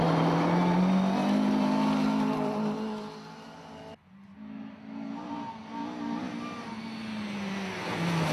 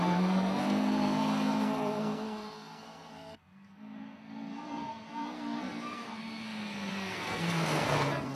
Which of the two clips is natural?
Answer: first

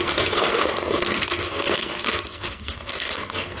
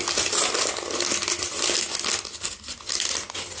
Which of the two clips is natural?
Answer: second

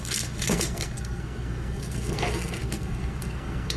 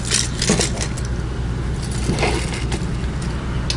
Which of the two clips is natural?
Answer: second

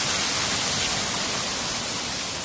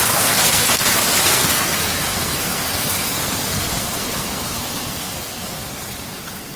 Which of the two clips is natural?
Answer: first